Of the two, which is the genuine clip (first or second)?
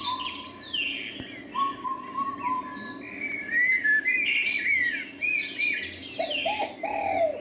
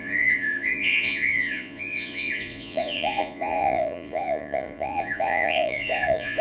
first